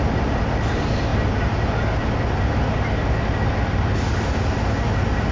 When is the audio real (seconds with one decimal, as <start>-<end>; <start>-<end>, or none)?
0.0-5.3